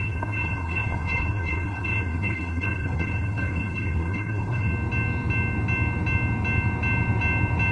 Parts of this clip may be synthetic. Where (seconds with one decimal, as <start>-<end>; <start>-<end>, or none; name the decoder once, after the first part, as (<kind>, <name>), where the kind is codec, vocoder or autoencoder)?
0.0-4.7 (codec, SNAC)